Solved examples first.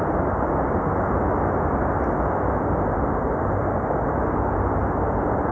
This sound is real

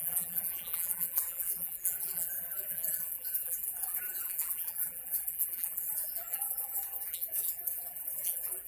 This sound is fake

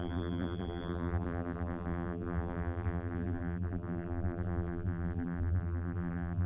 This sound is fake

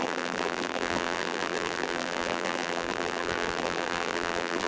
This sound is fake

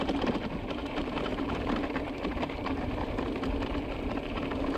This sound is fake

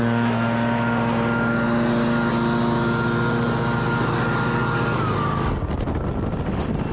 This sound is real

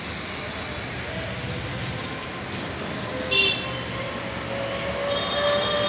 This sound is real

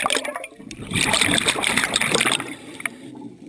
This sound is fake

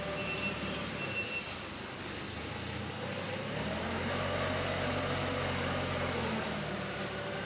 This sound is real